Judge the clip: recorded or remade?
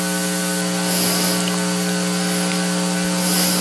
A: recorded